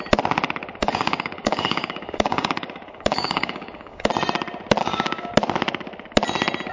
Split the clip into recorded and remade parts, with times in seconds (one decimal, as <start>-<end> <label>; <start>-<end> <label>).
0.0-0.8 recorded; 0.8-4.1 remade; 4.1-4.8 recorded; 4.8-5.3 remade; 5.3-6.7 recorded